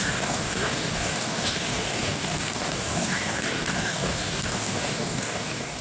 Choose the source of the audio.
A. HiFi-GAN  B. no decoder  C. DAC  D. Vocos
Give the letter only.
C